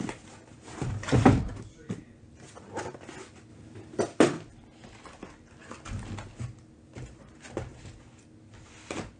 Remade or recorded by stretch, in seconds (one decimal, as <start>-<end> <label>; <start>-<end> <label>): 0.0-0.5 recorded; 0.5-1.5 remade; 1.5-3.5 recorded; 3.5-4.0 remade; 4.0-7.7 recorded; 7.7-8.3 remade; 8.3-9.2 recorded